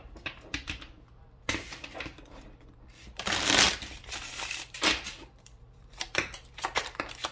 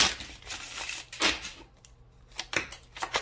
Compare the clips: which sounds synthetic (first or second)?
first